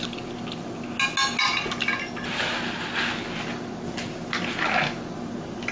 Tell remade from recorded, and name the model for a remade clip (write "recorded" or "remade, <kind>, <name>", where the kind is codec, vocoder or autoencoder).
recorded